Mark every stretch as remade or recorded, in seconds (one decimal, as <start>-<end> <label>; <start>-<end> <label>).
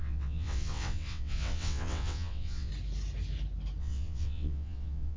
0.0-2.7 remade; 2.7-3.8 recorded; 3.8-5.2 remade